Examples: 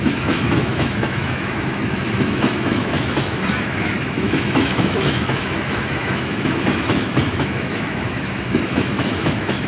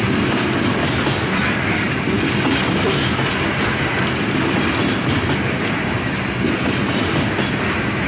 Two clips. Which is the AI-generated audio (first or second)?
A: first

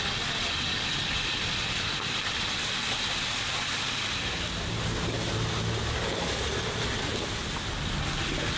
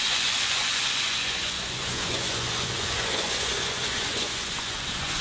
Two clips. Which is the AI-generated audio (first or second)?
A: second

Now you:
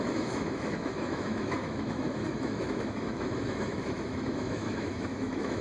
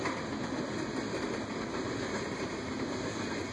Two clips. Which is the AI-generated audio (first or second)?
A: first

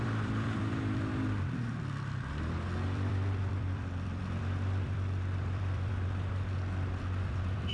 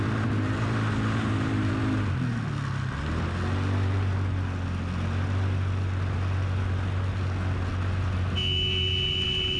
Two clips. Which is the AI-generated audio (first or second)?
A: first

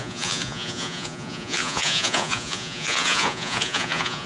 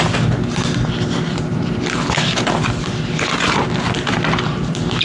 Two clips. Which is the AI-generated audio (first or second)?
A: first